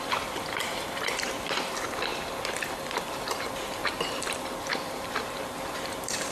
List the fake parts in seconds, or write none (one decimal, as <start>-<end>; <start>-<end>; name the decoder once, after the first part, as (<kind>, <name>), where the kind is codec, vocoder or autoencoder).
0.0-2.1 (vocoder, BigVGAN v2); 2.7-3.8; 4.6-6.3